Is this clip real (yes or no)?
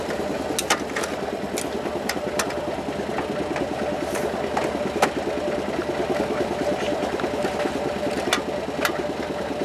yes